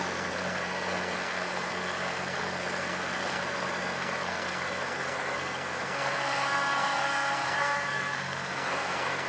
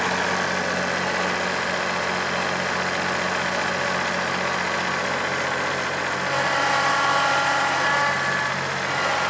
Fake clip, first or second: first